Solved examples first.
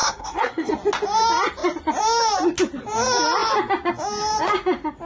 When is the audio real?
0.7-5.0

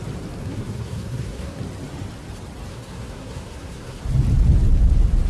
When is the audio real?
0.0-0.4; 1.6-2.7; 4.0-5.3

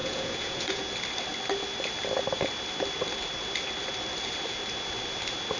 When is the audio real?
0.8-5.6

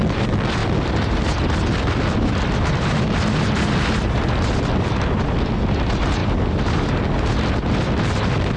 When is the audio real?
0.0-8.6

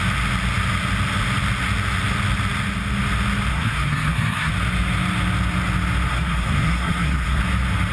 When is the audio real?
0.0-3.5; 4.5-6.1; 7.4-7.9

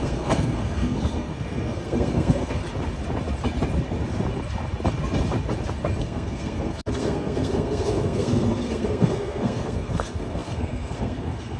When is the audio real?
2.6-6.0